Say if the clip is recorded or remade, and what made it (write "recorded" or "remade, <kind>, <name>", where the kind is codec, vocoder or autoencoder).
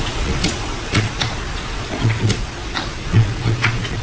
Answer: remade, vocoder, Vocos